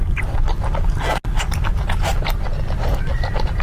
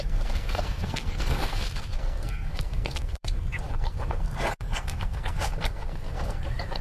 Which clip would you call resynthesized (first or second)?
second